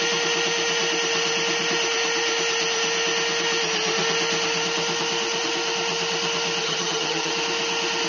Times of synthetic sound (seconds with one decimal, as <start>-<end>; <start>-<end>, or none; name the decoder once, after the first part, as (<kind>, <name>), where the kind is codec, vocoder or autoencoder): 6.6-7.3 (vocoder, HiFi-GAN)